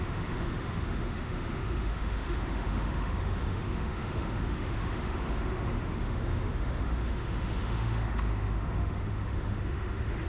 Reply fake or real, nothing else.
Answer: fake